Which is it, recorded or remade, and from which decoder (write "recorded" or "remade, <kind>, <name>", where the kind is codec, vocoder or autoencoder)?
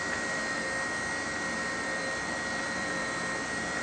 remade, vocoder, BigVGAN v2